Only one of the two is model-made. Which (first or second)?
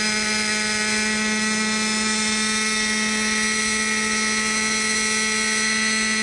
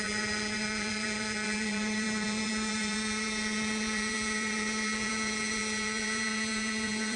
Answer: second